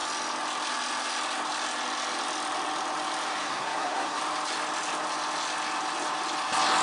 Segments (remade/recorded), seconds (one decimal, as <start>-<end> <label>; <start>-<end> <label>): 0.0-3.4 recorded; 3.4-4.2 remade; 4.2-6.8 recorded